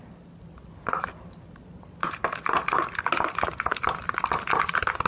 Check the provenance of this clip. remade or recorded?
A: recorded